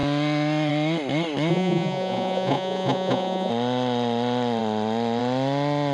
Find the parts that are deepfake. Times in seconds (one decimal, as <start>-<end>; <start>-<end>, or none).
1.5-3.5